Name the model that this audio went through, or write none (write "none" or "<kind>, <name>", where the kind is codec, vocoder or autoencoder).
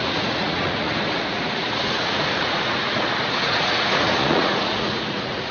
vocoder, Vocos